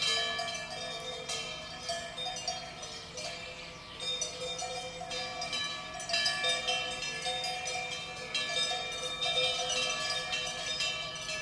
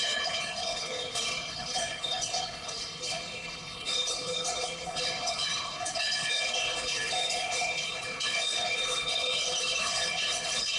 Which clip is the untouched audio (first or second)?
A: first